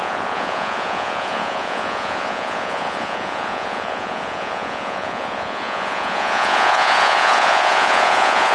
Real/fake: fake